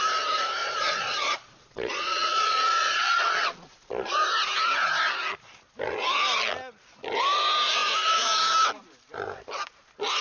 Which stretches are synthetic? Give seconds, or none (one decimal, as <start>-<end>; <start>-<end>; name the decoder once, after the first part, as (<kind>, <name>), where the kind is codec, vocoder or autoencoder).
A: 0.6-4.1 (vocoder, Vocos)